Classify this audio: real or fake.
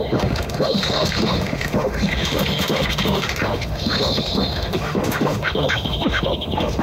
fake